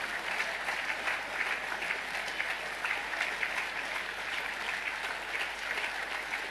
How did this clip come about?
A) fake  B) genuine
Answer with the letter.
A